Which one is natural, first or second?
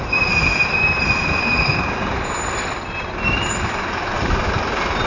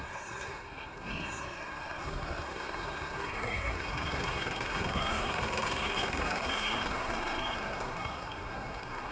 first